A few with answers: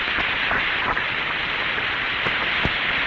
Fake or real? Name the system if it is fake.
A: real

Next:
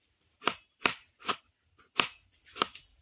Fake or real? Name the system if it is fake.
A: real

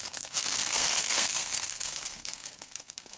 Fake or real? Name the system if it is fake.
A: fake, codec, SNAC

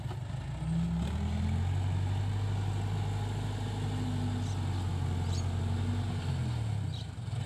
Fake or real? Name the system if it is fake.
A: real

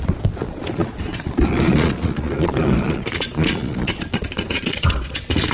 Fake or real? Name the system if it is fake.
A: fake, vocoder, Vocos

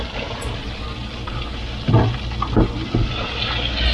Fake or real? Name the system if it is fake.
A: real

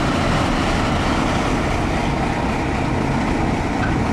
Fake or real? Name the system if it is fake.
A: real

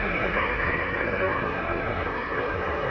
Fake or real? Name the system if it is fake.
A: fake, codec, SNAC